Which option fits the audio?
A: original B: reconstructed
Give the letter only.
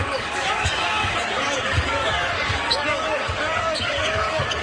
B